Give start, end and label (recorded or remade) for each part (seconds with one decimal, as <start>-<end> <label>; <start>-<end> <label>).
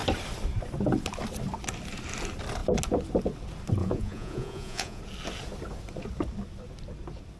0.0-3.8 recorded; 3.8-5.0 remade; 5.0-7.4 recorded